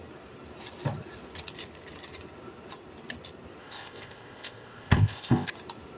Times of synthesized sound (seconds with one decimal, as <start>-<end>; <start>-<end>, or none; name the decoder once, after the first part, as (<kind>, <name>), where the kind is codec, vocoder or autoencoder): 3.6-5.5 (codec, ZipCodec)